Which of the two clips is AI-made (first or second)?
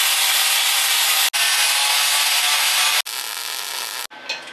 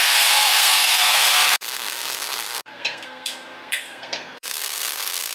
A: second